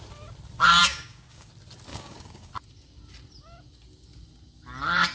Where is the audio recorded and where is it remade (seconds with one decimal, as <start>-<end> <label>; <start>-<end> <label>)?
0.0-0.8 recorded; 0.8-1.5 remade; 1.5-1.9 recorded; 1.9-2.5 remade; 2.5-5.1 recorded